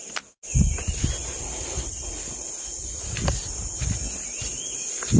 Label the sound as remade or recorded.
recorded